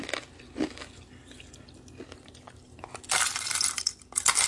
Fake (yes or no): no